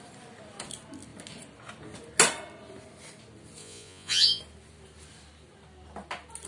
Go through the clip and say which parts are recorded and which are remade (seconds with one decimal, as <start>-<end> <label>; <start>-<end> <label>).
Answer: 0.0-3.6 recorded; 3.6-4.4 remade; 4.4-6.5 recorded